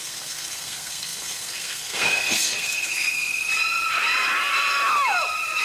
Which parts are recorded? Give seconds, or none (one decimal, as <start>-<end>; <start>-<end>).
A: 3.5-5.6